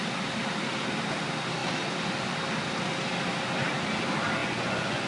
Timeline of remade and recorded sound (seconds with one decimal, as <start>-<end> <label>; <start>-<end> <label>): 0.0-4.4 recorded; 4.4-5.1 remade